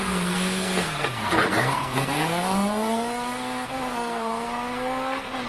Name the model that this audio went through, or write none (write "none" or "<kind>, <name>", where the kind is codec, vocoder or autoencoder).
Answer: codec, SNAC